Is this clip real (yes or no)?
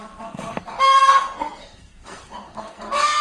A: no